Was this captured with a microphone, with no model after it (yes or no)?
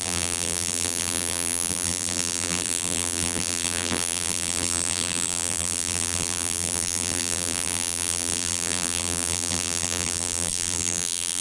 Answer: no